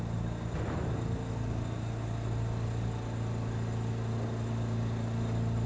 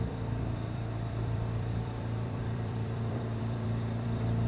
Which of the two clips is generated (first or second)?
second